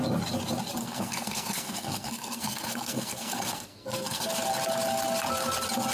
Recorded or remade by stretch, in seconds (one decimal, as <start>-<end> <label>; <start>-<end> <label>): 0.0-0.8 recorded; 0.8-4.3 remade; 4.3-5.9 recorded